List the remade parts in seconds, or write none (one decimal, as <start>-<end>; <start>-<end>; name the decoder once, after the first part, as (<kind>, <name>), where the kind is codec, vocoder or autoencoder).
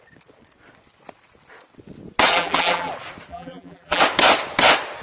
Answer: 2.3-2.9 (vocoder, BigVGAN v2); 3.3-4.0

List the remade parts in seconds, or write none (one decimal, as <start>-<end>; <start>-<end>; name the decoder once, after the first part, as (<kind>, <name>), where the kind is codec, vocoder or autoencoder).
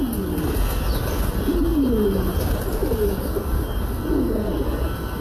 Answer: none